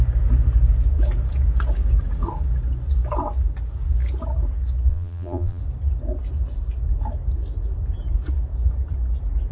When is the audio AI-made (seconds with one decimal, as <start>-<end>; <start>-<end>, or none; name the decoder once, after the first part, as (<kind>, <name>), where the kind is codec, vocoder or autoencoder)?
4.9-5.6 (vocoder, BigVGAN v2)